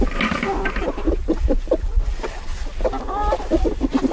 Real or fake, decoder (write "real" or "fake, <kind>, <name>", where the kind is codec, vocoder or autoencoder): real